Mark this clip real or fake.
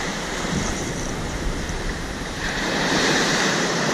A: fake